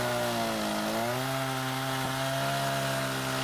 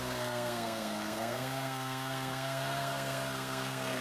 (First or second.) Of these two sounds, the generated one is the second